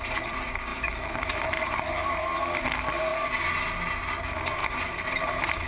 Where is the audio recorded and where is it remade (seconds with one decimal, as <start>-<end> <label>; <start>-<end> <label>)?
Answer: 0.0-0.7 recorded; 0.7-1.9 remade; 1.9-4.6 recorded; 4.6-5.3 remade; 5.3-5.7 recorded

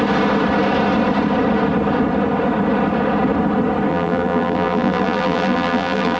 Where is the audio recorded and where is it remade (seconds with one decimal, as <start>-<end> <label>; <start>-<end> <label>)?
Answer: 0.0-3.9 recorded; 3.9-6.2 remade

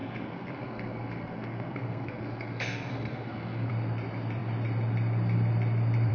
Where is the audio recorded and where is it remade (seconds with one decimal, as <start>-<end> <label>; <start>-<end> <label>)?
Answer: 0.0-3.7 remade; 3.7-6.1 recorded

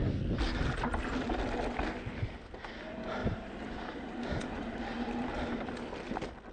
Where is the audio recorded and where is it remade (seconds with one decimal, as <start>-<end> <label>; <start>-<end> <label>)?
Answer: 0.0-3.2 recorded; 3.2-5.7 remade; 5.7-6.5 recorded

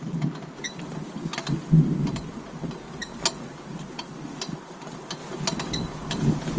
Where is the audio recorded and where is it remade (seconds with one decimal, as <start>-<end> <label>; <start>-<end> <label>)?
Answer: 0.0-6.6 recorded

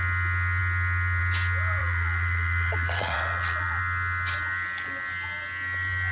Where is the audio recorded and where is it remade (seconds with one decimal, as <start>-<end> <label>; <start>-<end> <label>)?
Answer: 0.0-1.8 recorded; 1.8-3.8 remade; 3.8-6.1 recorded